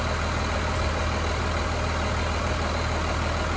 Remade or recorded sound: remade